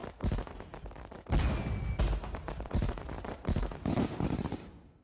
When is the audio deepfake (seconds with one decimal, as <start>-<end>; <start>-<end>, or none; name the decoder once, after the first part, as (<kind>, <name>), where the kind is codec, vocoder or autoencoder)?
2.0-5.0 (vocoder, BigVGAN v2)